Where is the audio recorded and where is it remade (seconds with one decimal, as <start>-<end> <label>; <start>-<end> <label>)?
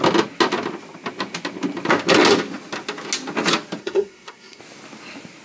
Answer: 0.0-3.8 recorded; 3.8-4.6 remade; 4.6-5.4 recorded